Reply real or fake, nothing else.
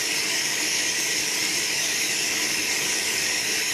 fake